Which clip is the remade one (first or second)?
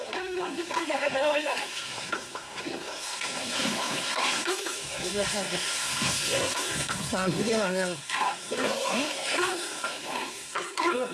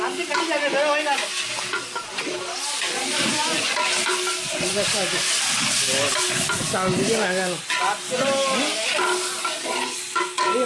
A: first